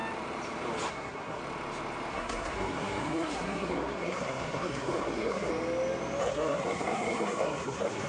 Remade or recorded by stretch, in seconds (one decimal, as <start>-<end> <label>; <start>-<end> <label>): 0.0-0.9 recorded; 0.9-1.4 remade; 1.4-2.1 recorded; 2.1-5.5 remade; 5.5-6.2 recorded; 6.2-8.1 remade